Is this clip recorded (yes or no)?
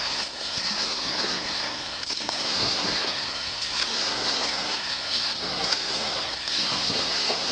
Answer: no